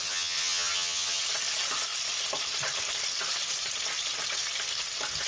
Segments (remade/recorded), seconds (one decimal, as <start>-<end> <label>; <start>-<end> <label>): 0.0-1.2 remade; 1.2-5.3 recorded